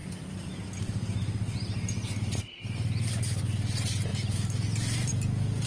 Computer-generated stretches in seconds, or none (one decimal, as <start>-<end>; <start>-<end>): none